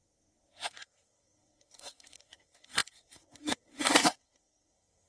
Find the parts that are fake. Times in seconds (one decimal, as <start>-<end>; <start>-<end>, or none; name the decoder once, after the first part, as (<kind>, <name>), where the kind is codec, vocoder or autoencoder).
0.0-5.1 (codec, SNAC)